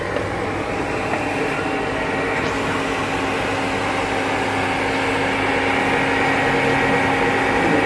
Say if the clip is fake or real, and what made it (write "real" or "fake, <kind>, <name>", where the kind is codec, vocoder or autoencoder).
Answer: real